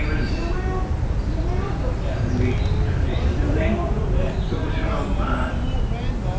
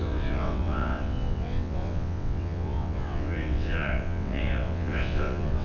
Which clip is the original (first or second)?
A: first